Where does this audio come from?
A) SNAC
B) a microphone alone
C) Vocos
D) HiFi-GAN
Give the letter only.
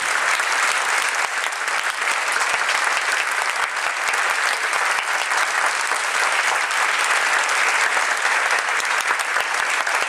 B